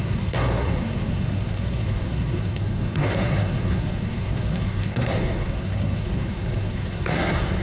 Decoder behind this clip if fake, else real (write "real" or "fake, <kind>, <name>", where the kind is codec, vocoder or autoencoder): fake, codec, SNAC